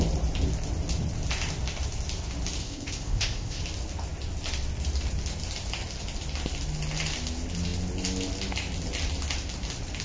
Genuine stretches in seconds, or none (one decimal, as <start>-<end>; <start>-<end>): 0.0-2.6; 3.6-10.0